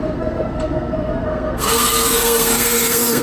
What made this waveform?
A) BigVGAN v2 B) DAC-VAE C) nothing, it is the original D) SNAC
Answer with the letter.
D